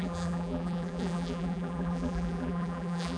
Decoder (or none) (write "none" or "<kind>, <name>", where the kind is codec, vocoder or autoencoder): vocoder, BigVGAN v2